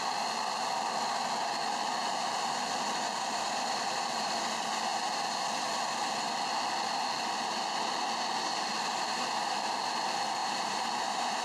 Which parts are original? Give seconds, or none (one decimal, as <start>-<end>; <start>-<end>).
0.0-10.4